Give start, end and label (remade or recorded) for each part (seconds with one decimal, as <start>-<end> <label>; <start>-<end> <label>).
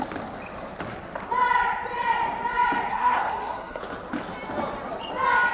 0.0-2.9 recorded; 2.9-3.8 remade; 3.8-5.5 recorded